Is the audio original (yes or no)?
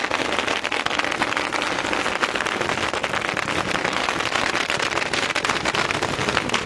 yes